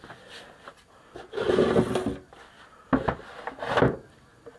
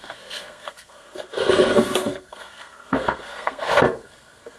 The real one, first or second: first